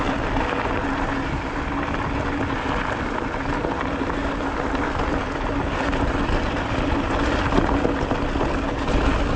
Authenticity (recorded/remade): recorded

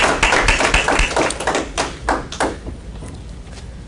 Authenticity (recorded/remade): recorded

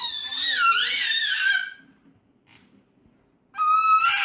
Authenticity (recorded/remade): recorded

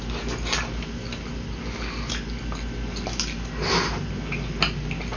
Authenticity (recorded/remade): recorded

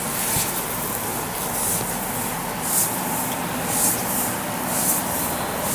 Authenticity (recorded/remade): recorded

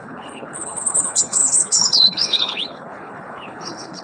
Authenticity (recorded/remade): remade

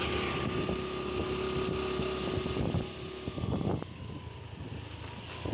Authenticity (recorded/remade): recorded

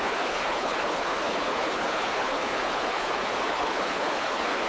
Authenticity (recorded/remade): remade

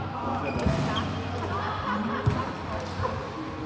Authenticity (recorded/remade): recorded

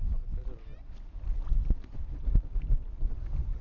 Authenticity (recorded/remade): recorded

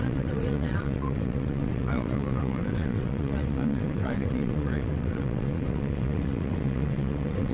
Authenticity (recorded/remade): remade